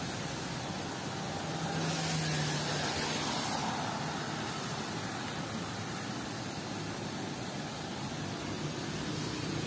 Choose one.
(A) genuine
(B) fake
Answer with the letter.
A